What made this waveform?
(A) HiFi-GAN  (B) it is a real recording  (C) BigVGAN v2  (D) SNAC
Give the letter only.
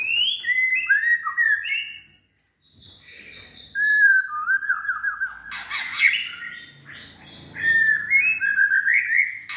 B